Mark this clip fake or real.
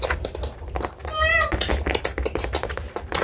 real